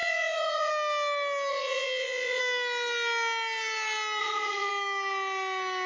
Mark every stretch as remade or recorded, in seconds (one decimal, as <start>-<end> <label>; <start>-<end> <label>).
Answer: 0.0-0.7 remade; 0.7-1.5 recorded; 1.5-2.4 remade; 2.4-4.2 recorded; 4.2-4.7 remade; 4.7-5.9 recorded